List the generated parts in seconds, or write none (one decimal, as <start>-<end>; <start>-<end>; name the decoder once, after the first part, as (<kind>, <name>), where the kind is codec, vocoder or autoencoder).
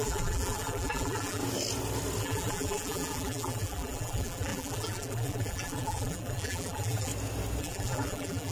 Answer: 0.0-1.4 (vocoder, BigVGAN v2); 2.2-7.1; 7.6-8.5